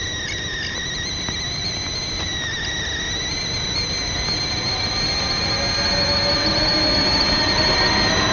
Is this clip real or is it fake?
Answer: real